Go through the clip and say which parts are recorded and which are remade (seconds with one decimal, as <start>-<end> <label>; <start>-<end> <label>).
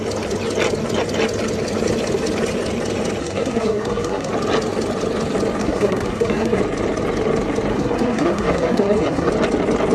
0.0-3.2 recorded; 3.2-4.3 remade; 4.3-5.6 recorded; 5.6-6.6 remade; 6.6-7.7 recorded; 7.7-9.3 remade; 9.3-9.9 recorded